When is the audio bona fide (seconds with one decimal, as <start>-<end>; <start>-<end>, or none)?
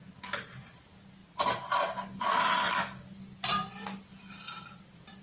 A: 0.0-5.2